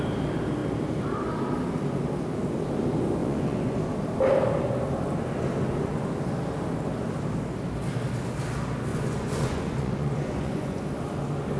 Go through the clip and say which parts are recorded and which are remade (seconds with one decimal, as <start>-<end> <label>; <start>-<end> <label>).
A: 0.0-3.2 recorded; 3.2-3.8 remade; 3.8-8.9 recorded; 8.9-10.8 remade; 10.8-11.6 recorded